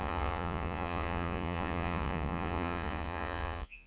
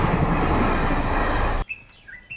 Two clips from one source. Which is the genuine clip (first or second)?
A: second